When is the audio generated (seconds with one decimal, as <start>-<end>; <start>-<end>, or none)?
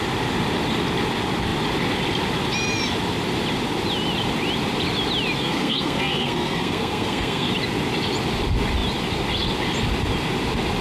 5.4-7.5